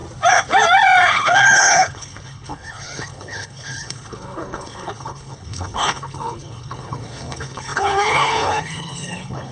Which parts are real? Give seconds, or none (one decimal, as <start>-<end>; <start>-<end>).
0.0-1.1